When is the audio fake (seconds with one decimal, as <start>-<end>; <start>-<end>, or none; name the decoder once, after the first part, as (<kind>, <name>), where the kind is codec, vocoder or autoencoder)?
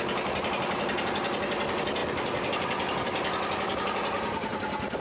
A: none